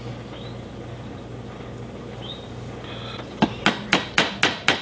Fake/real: real